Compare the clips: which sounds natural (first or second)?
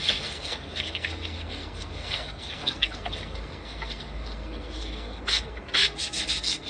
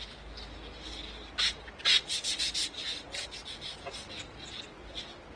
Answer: second